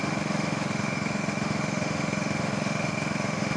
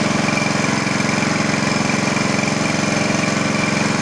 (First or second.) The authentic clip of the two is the second